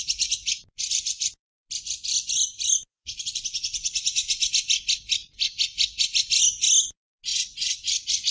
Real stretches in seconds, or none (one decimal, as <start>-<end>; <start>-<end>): 0.0-2.9; 4.5-8.3